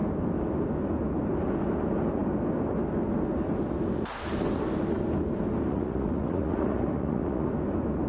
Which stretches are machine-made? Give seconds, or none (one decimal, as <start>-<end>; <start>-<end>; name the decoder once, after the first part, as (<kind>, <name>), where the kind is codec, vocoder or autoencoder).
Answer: 5.7-7.5 (vocoder, Vocos)